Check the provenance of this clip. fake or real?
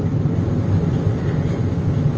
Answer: real